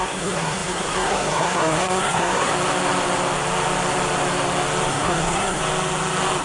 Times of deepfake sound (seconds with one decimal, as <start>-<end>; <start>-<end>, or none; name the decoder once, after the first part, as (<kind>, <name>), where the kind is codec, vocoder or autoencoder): 0.0-2.5 (codec, SNAC); 4.9-5.6